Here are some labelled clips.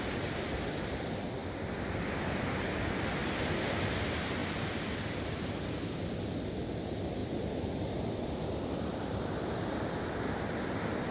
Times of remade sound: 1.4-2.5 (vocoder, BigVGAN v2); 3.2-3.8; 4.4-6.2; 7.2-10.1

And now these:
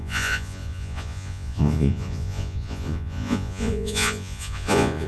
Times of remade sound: 0.0-5.1 (vocoder, Vocos)

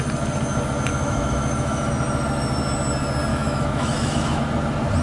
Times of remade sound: 0.9-1.9 (autoencoder, DAC-VAE); 3.3-4.4

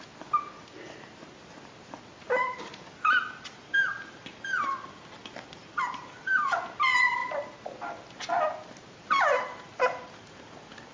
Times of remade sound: none